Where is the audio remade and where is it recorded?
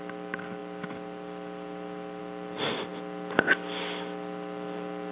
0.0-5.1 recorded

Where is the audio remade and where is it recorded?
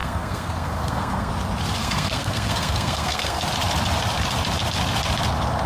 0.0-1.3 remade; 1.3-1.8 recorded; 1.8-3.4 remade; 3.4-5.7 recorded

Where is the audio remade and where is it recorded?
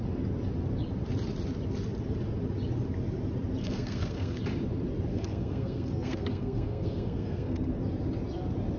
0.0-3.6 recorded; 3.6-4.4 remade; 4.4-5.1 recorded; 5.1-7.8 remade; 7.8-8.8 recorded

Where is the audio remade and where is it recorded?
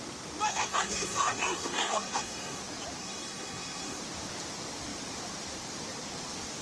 0.0-0.5 recorded; 0.5-2.6 remade; 2.6-3.0 recorded; 3.0-4.0 remade; 4.0-6.6 recorded